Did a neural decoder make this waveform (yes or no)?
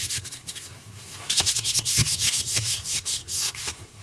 yes